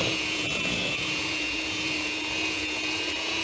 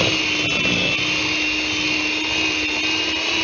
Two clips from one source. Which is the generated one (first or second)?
first